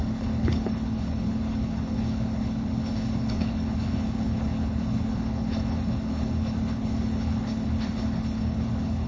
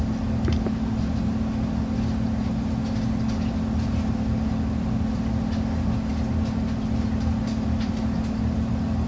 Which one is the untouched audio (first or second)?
second